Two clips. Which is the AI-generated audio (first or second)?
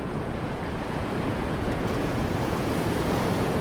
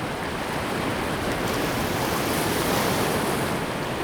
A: first